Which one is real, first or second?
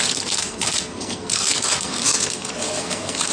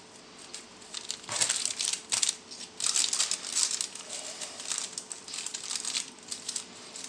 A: second